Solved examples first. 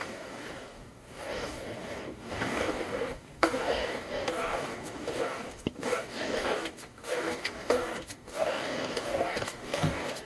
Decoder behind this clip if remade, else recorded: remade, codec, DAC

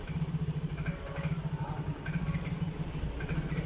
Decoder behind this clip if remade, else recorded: recorded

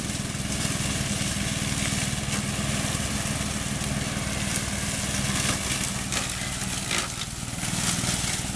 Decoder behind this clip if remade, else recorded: recorded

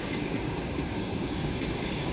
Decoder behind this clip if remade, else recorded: remade, codec, DAC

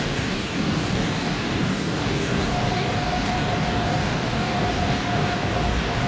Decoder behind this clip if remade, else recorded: remade, codec, DAC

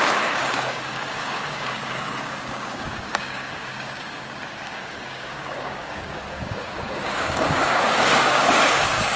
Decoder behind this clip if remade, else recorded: remade, codec, DAC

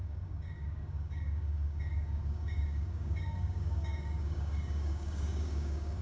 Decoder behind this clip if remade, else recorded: remade, codec, DAC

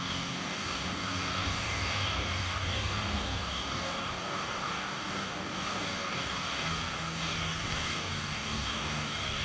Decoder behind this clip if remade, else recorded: remade, codec, DAC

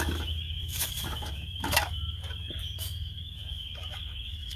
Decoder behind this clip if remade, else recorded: remade, codec, DAC